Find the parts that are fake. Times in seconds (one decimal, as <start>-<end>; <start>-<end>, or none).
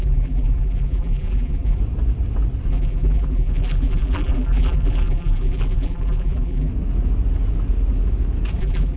0.0-1.8; 2.7-6.7; 8.6-9.0